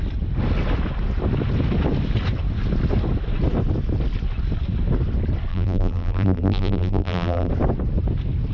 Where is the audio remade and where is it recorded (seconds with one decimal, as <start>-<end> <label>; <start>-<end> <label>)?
0.0-5.5 recorded; 5.5-7.5 remade; 7.5-8.5 recorded